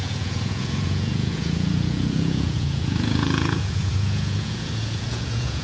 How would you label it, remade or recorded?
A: remade